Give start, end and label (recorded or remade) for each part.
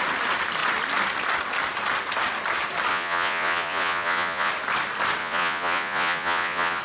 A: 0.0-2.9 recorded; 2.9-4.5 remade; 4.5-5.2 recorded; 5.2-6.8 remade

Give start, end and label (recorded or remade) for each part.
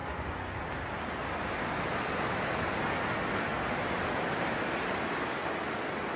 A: 0.0-0.6 remade; 0.6-6.2 recorded